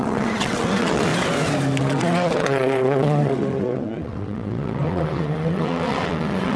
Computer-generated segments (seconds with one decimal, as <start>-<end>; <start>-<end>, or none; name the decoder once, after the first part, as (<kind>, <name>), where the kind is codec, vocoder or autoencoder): 0.0-1.1 (vocoder, WaveNeXt); 1.8-6.6